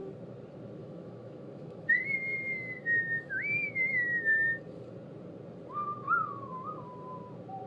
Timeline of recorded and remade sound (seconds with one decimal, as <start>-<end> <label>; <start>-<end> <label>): 0.0-0.8 recorded; 0.8-3.9 remade; 3.9-7.7 recorded